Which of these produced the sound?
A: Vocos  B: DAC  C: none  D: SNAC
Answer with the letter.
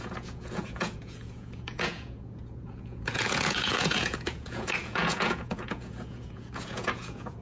A